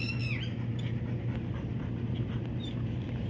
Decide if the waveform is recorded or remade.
recorded